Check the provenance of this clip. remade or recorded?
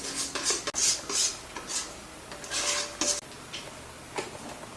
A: recorded